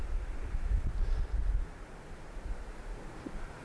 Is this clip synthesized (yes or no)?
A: no